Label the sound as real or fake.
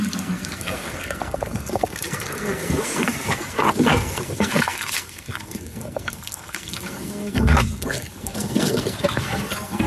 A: fake